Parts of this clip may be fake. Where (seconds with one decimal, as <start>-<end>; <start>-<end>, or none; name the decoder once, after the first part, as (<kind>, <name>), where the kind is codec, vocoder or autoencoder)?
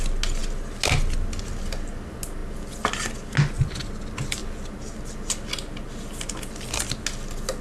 none